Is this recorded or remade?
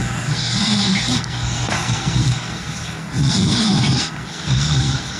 remade